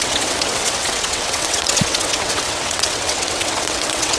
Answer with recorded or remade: remade